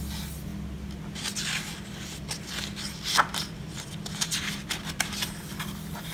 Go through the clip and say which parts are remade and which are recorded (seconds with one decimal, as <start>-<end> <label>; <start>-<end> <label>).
0.0-6.1 recorded